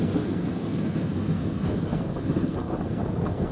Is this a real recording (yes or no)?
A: no